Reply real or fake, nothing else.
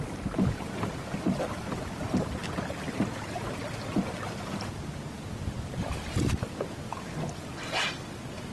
real